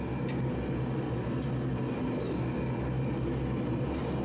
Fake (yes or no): no